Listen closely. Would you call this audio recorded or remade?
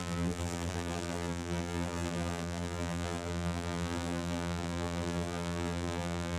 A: remade